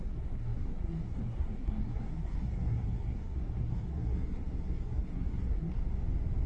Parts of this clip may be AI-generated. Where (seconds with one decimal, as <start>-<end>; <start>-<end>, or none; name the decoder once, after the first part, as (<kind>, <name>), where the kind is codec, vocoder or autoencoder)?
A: 0.0-5.8 (codec, SNAC)